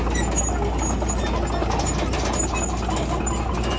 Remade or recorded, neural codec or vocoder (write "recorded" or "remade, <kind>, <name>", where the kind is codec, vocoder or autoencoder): recorded